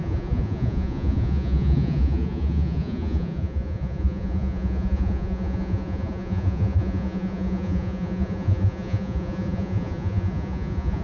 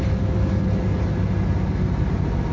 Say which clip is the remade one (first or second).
first